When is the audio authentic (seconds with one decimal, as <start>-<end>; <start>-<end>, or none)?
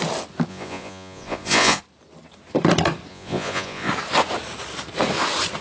0.0-0.5; 1.8-3.1; 3.9-5.6